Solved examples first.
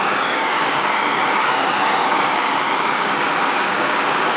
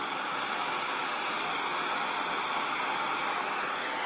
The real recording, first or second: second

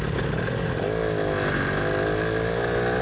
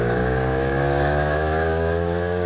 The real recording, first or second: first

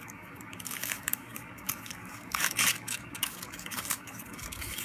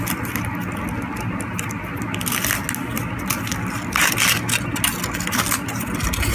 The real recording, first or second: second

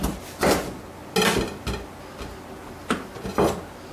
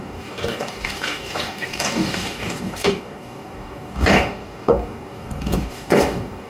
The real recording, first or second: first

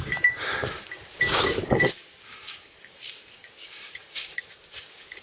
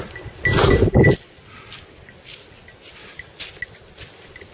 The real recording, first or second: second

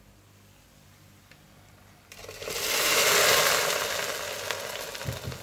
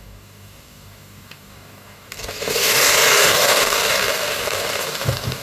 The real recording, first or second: first